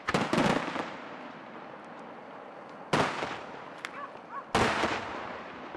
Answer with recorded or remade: recorded